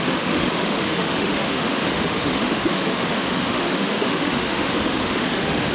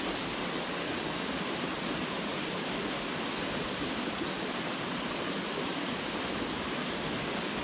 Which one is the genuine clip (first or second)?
second